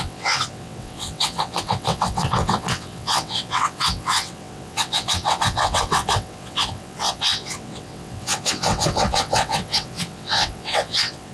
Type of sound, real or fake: fake